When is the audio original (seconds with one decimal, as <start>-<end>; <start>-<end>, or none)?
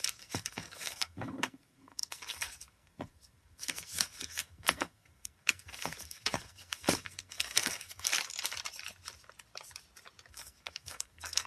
8.1-10.3